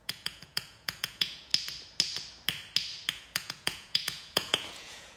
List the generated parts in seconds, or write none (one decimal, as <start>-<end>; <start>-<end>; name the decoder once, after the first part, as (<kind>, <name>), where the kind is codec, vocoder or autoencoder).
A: 0.0-1.5 (vocoder, Vocos); 3.1-5.2